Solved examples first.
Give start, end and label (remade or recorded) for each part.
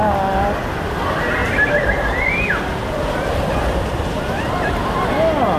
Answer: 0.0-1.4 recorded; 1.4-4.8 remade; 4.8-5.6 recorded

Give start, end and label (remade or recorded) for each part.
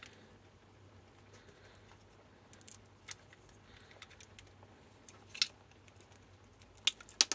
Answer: 0.0-7.3 recorded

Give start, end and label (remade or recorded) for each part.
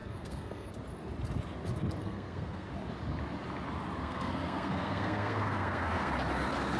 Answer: 0.0-0.7 remade; 0.7-2.0 recorded; 2.0-2.7 remade; 2.7-4.0 recorded; 4.0-6.1 remade; 6.1-6.8 recorded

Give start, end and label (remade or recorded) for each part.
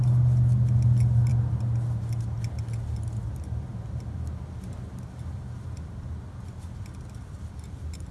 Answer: 0.0-8.1 recorded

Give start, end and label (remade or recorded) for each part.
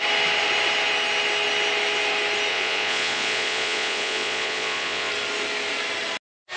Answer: 0.0-2.5 recorded; 2.5-5.1 remade; 5.1-6.6 recorded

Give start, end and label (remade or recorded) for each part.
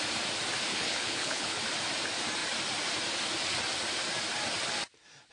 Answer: 0.0-0.7 recorded; 0.7-1.6 remade; 1.6-5.3 recorded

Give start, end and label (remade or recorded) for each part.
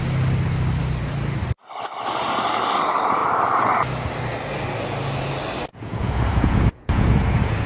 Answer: 0.0-5.7 recorded; 5.7-7.7 remade